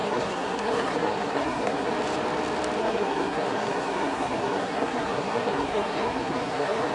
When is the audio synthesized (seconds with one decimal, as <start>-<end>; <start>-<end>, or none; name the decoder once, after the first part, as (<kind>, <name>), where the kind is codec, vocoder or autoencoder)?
0.0-1.9 (codec, SNAC); 2.8-6.9